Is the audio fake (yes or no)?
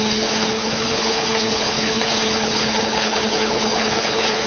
yes